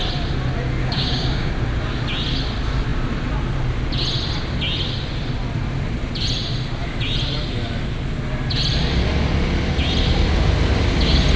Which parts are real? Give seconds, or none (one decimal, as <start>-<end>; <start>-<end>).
0.0-0.8; 1.5-11.4